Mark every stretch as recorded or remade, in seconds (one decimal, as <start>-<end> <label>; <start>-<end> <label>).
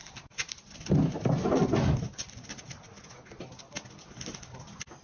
0.0-5.0 recorded